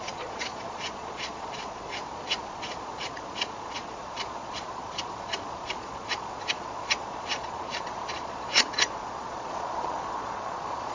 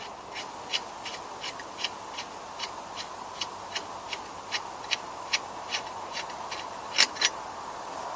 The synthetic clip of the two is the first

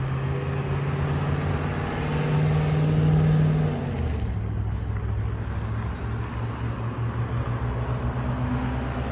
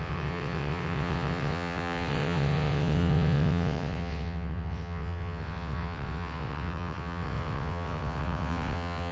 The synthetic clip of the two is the second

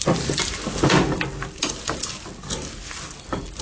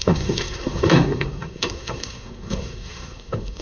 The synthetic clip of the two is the second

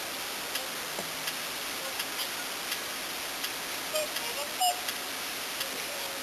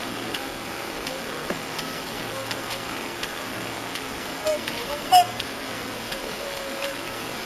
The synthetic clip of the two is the second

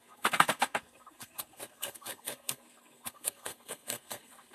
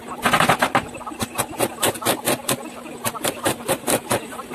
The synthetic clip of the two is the first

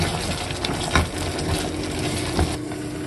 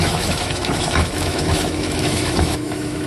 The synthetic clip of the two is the second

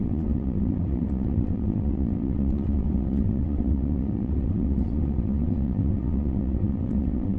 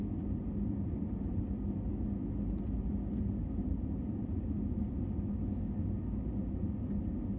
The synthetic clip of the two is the first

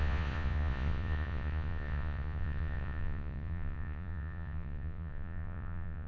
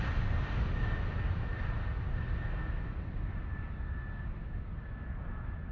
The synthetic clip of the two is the first